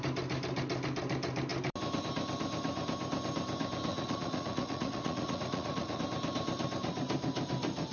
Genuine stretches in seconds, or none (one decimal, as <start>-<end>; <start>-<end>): 0.0-3.9; 6.0-7.9